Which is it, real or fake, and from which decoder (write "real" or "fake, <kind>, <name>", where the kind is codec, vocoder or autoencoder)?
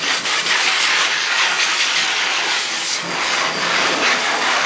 fake, codec, DAC